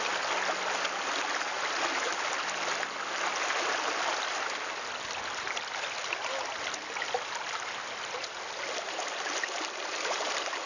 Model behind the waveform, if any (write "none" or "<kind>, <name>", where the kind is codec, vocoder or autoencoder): none